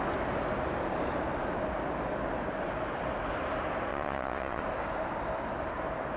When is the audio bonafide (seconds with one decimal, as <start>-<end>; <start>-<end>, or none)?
0.0-3.9; 4.6-6.2